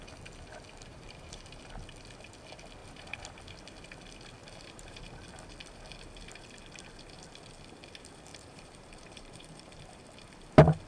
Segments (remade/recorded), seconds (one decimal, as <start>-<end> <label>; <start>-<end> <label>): 0.0-0.9 recorded; 0.9-1.6 remade; 1.6-2.8 recorded; 2.8-3.4 remade; 3.4-4.4 recorded; 4.4-5.0 remade; 5.0-8.3 recorded; 8.3-10.3 remade; 10.3-10.9 recorded